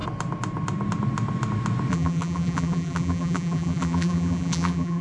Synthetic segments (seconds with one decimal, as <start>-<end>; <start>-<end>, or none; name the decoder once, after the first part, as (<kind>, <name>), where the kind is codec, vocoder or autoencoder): 1.9-5.0 (vocoder, BigVGAN v2)